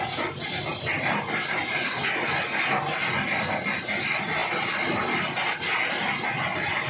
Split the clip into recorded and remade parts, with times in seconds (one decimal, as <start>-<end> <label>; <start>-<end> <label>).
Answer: 0.0-6.9 recorded